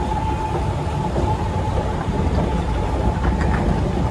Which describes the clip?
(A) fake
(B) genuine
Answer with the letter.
B